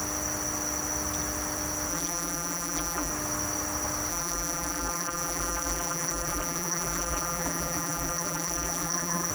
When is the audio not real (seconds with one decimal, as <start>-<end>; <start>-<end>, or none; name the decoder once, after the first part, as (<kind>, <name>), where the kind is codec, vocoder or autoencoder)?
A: 1.9-3.1 (vocoder, BigVGAN v2); 4.1-9.3